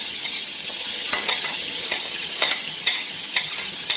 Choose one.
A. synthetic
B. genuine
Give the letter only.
A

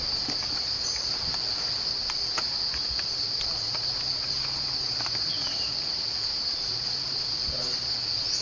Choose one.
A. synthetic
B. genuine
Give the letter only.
B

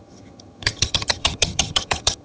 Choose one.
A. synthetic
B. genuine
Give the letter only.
A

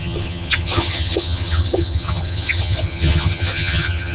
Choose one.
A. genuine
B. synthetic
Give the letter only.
B